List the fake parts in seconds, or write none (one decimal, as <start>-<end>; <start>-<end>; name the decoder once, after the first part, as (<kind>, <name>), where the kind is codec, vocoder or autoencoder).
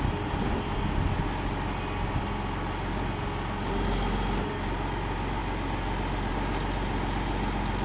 none